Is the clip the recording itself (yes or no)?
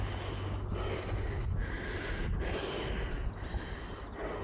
yes